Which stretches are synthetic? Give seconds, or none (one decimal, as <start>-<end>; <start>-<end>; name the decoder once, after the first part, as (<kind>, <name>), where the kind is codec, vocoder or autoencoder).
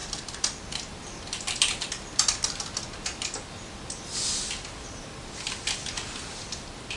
0.0-0.6 (vocoder, BigVGAN v2)